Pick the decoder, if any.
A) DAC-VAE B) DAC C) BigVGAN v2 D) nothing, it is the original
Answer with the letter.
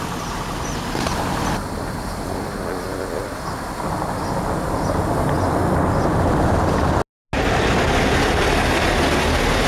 D